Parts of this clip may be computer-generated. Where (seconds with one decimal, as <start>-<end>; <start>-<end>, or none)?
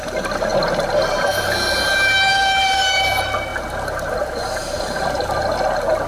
2.3-3.0